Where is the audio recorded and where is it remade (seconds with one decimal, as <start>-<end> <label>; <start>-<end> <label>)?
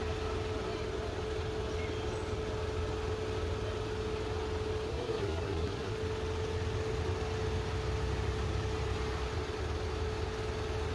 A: 0.0-4.9 recorded; 4.9-5.9 remade; 5.9-10.9 recorded